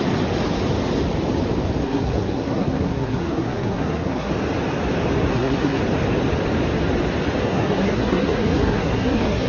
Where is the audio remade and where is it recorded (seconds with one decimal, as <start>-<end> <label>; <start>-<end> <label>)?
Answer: 0.0-1.8 recorded; 1.8-4.3 remade; 4.3-5.3 recorded; 5.3-5.8 remade; 5.8-7.4 recorded; 7.4-9.5 remade